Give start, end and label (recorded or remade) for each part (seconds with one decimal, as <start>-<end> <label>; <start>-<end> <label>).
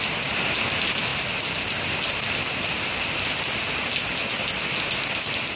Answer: 0.0-5.6 recorded